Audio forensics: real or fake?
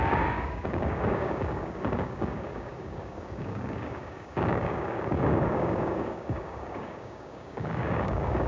fake